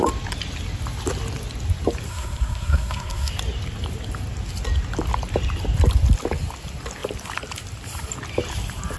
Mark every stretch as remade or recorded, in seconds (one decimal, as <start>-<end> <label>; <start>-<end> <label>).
0.0-2.1 recorded; 2.1-3.3 remade; 3.3-9.0 recorded